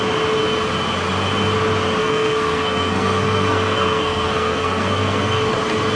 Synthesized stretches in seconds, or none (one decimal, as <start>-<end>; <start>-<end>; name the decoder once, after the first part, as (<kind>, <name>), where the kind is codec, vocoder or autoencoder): 2.0-5.5 (codec, SNAC)